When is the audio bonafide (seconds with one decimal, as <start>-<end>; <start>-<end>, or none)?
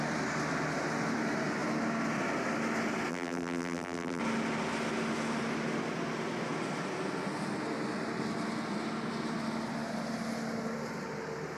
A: 0.0-3.1; 4.2-11.6